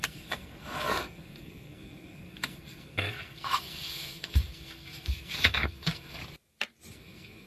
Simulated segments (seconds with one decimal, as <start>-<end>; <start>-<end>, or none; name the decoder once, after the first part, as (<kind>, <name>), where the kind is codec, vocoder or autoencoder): 0.0-6.2 (codec, SNAC); 6.9-7.5